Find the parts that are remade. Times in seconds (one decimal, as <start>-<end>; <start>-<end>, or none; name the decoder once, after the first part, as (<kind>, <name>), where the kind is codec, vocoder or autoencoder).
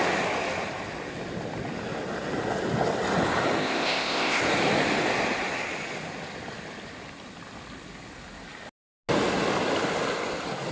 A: 3.6-4.4 (codec, ZipCodec)